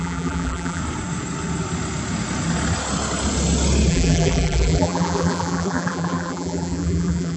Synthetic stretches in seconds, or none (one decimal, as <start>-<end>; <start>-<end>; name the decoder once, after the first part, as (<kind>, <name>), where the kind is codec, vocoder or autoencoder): 0.0-0.8 (vocoder, BigVGAN v2); 3.9-7.4

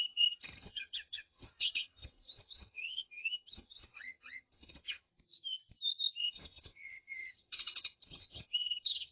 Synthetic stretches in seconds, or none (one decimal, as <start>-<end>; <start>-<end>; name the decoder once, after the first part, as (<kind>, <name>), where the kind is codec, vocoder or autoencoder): 0.0-5.1 (vocoder, HiFi-GAN); 6.2-9.1